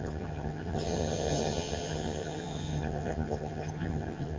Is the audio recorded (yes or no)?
no